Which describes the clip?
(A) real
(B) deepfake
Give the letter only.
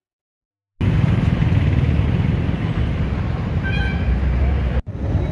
A